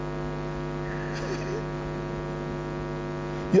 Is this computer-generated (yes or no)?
yes